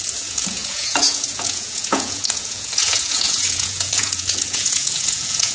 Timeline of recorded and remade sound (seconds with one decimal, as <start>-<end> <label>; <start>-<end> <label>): 0.0-5.5 remade